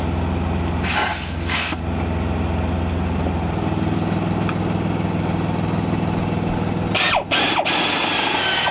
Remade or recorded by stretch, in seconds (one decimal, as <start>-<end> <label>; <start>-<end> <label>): 0.0-1.1 recorded; 1.1-1.8 remade; 1.8-8.7 recorded